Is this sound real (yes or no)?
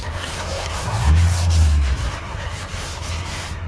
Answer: no